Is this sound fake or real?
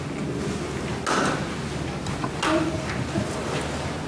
real